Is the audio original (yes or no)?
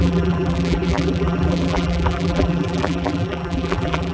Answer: no